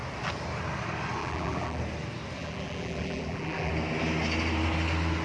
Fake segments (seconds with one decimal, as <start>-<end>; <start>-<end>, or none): 1.2-1.8; 2.4-3.7